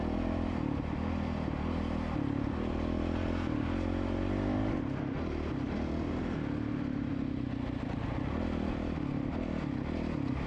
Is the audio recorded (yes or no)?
yes